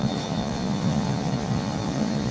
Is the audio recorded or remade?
remade